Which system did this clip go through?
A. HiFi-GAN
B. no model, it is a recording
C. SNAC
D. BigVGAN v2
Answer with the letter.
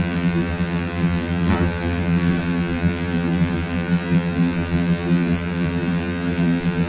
D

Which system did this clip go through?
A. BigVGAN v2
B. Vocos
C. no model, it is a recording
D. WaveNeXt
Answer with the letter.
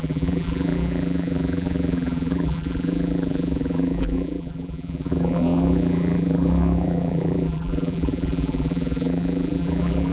A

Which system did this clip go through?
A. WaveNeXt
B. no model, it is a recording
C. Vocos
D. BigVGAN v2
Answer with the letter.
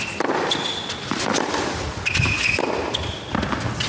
B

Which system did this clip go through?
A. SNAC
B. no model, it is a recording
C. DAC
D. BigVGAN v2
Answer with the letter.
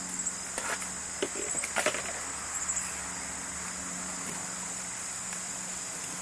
B